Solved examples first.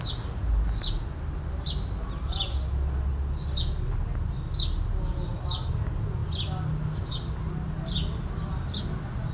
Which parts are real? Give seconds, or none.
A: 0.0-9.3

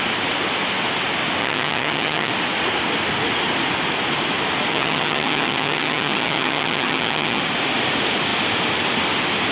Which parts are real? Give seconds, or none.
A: 0.0-1.4; 2.3-4.7; 7.4-9.5